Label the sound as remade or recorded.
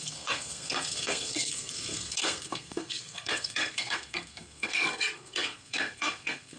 remade